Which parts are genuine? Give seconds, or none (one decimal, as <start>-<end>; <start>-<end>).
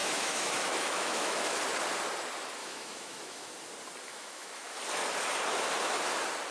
1.6-2.6; 3.5-4.1; 4.8-6.5